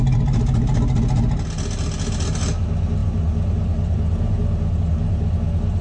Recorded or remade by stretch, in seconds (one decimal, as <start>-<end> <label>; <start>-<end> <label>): 0.0-5.8 recorded

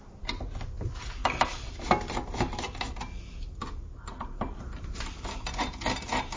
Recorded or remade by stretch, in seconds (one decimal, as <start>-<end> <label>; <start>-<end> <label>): 0.0-6.4 recorded

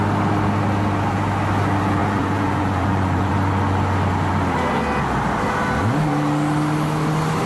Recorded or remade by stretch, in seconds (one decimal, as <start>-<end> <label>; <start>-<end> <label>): 0.0-2.0 recorded; 2.0-3.3 remade; 3.3-7.5 recorded

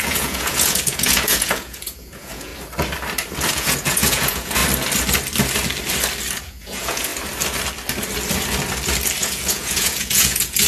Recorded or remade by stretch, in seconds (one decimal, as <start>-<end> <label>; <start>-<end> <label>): 0.0-2.5 remade; 2.5-3.5 recorded; 3.5-4.6 remade; 4.6-6.4 recorded; 6.4-7.1 remade; 7.1-9.2 recorded; 9.2-10.7 remade

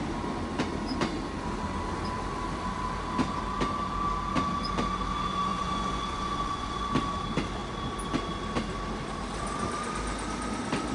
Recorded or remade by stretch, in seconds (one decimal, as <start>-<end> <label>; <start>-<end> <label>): 0.0-5.5 recorded; 5.5-6.9 remade; 6.9-10.9 recorded

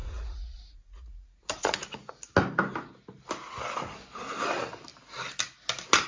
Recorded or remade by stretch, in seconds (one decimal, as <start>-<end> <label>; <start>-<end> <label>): 0.0-2.1 remade; 2.1-6.1 recorded